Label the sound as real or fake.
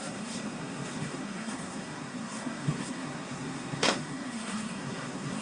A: fake